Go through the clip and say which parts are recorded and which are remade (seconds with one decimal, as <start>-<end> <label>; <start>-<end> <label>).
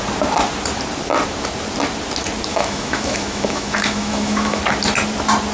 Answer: 0.0-2.5 recorded; 2.5-4.6 remade; 4.6-5.5 recorded